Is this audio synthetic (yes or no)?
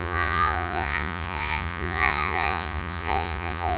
yes